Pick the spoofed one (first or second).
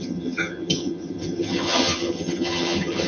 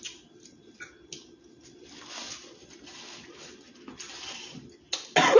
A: first